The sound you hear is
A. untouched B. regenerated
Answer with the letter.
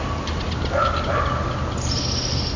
A